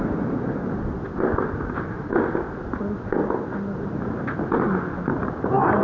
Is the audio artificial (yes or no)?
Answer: no